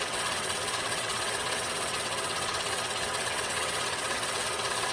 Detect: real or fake fake